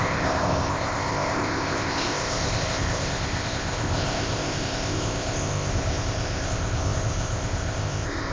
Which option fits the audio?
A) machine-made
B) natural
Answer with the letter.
A